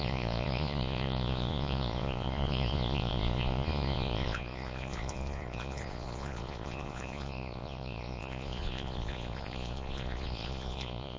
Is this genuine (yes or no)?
no